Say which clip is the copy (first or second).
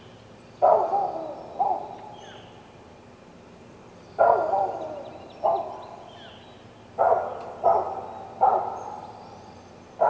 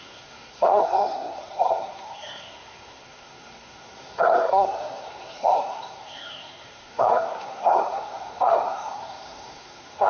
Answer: second